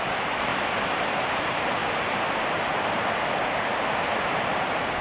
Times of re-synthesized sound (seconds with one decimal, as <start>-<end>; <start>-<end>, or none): 0.0-0.5; 1.0-5.0